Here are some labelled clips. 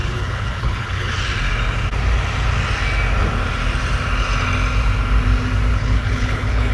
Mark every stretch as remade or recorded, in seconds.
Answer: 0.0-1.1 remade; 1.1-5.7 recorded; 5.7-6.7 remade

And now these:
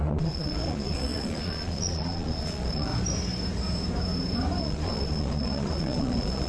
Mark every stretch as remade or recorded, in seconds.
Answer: 0.0-2.9 remade; 2.9-4.6 recorded; 4.6-6.5 remade

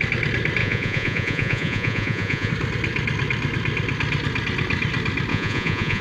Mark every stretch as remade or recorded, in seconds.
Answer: 0.0-0.6 recorded; 0.6-2.5 remade; 2.5-5.3 recorded; 5.3-6.0 remade

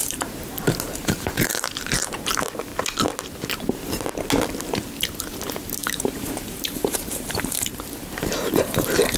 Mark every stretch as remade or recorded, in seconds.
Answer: 0.0-2.7 remade; 2.7-5.3 recorded; 5.3-9.2 remade

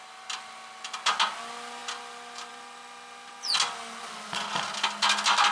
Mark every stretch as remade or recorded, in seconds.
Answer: 0.0-5.5 recorded